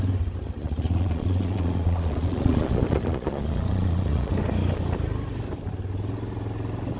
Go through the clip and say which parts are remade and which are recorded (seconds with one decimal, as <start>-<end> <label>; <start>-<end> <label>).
0.0-0.6 recorded; 0.6-4.3 remade; 4.3-7.0 recorded